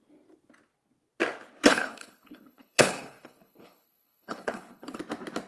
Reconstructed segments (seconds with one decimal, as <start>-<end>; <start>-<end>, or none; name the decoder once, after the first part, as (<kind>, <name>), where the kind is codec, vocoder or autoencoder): 1.7-5.0 (codec, HILCodec)